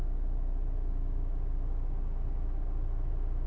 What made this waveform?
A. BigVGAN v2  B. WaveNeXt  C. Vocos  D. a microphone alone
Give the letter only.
D